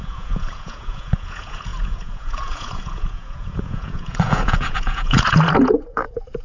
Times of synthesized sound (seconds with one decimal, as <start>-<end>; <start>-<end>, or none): 0.0-6.4